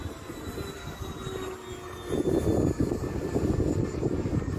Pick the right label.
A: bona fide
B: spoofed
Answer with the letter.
A